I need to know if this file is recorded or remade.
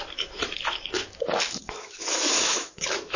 remade